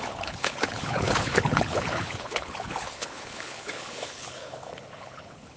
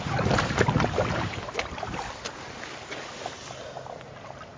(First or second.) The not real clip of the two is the first